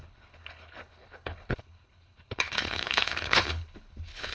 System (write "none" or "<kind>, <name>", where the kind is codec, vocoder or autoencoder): codec, HILCodec